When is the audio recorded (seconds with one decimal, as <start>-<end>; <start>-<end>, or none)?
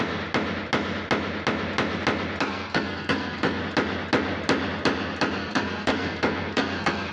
0.0-2.5; 3.6-5.4